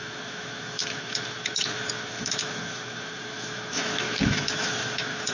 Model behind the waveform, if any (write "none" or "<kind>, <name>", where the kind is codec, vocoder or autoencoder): autoencoder, DAC-VAE